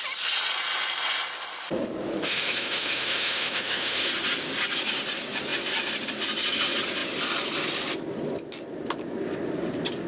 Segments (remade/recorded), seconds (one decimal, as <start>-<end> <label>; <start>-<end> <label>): 0.0-2.1 recorded; 2.1-4.1 remade; 4.1-10.1 recorded

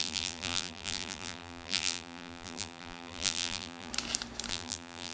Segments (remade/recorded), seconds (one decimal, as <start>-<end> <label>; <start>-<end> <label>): 0.0-3.9 remade; 3.9-4.5 recorded; 4.5-5.1 remade